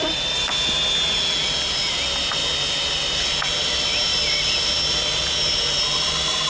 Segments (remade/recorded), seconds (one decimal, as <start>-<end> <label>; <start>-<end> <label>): 0.0-6.5 recorded